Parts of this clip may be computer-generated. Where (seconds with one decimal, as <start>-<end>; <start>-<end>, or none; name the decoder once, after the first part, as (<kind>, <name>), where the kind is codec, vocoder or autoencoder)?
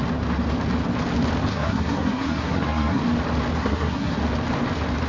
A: 1.5-3.0 (codec, SNAC); 3.6-4.2